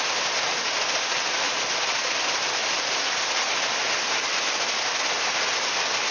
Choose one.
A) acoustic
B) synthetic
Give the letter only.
A